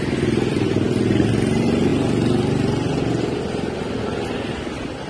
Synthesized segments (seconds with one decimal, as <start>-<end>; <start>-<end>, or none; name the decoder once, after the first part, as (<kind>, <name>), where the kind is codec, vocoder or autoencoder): none